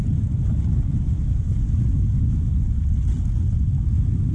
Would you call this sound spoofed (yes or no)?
no